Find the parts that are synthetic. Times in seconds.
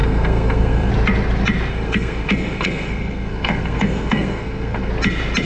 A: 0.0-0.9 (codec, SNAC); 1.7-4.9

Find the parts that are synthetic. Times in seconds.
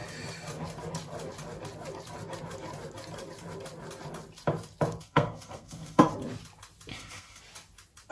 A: 5.0-6.1 (codec, SNAC); 6.9-7.4